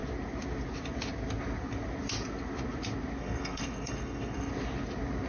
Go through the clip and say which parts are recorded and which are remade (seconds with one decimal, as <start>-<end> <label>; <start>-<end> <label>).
0.0-3.2 recorded; 3.2-4.5 remade; 4.5-5.3 recorded